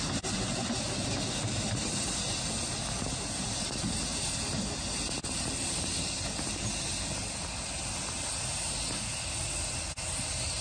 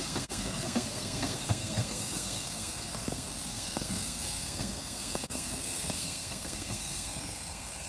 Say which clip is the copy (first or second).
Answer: second